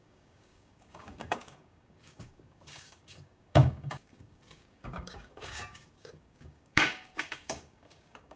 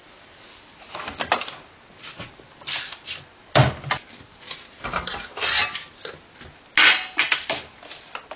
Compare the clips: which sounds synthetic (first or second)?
first